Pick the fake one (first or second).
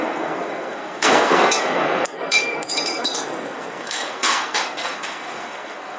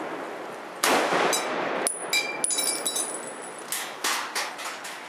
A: first